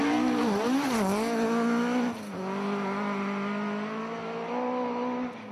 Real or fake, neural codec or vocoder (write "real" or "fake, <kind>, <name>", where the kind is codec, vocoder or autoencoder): real